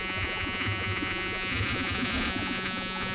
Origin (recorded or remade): remade